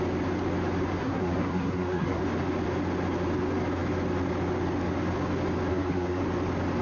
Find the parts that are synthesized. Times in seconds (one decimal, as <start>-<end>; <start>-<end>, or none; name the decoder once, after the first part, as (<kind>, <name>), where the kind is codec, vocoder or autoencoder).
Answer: 1.0-2.2 (codec, SNAC); 5.7-6.2